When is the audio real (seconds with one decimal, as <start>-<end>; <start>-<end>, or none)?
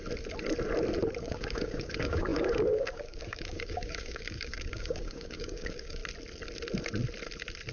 0.0-1.2; 6.0-7.7